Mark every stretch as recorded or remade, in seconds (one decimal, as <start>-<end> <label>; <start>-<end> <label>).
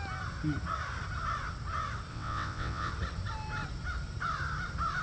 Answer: 0.0-2.1 recorded; 2.1-2.9 remade; 2.9-5.0 recorded